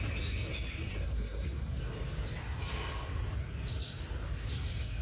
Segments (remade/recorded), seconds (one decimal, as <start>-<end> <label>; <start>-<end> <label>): 0.0-0.9 recorded; 0.9-1.8 remade; 1.8-5.0 recorded